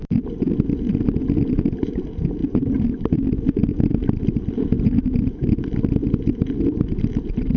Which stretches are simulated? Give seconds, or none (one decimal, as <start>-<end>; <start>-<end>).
2.4-3.1